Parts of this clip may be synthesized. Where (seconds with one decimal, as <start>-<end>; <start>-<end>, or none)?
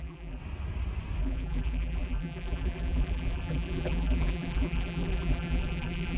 0.0-0.4; 1.2-6.2